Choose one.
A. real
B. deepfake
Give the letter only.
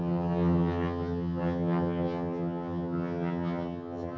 B